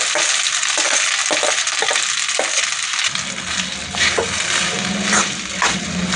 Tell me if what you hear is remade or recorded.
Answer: recorded